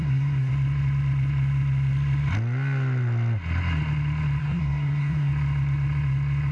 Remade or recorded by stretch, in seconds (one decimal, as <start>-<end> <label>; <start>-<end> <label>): 0.0-0.5 remade; 0.5-4.4 recorded; 4.4-5.3 remade; 5.3-6.5 recorded